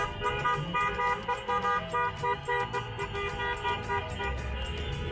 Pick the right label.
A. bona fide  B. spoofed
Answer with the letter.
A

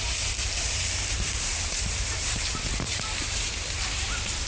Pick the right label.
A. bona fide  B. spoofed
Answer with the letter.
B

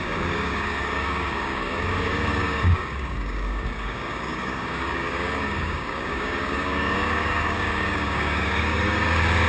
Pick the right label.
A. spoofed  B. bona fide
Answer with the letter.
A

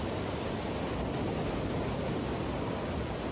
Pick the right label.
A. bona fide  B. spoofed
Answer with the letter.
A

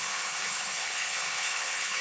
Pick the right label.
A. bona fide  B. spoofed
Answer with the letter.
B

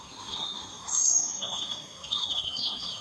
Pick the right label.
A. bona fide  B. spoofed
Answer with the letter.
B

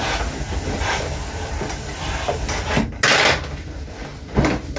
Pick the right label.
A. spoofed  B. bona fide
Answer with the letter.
B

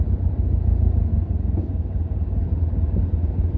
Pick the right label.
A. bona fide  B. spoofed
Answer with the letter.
A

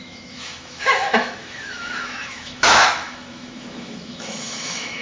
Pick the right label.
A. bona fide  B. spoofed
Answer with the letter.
B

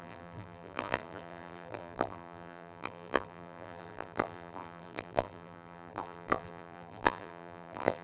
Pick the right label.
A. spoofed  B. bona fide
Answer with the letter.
A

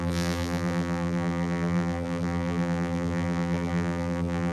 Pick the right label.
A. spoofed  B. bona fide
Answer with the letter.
A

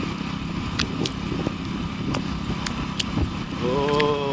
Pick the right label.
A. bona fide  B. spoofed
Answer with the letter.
A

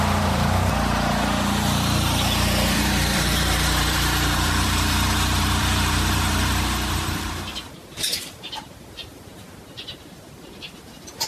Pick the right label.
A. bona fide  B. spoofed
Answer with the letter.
B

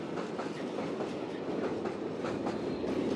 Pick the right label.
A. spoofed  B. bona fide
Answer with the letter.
B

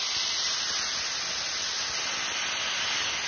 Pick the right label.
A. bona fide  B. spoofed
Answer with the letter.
A